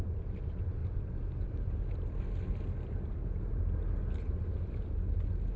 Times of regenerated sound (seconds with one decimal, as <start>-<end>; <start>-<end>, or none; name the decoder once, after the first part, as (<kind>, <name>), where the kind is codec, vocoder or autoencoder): none